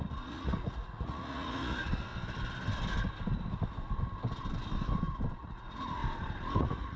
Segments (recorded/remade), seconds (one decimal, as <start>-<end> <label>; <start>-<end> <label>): 0.0-2.1 remade; 2.1-5.4 recorded; 5.4-6.0 remade; 6.0-6.6 recorded; 6.6-7.0 remade